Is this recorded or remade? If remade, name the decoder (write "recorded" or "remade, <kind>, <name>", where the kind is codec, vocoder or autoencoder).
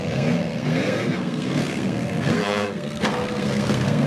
remade, codec, SNAC